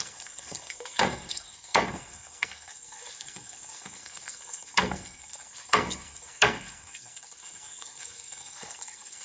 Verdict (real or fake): fake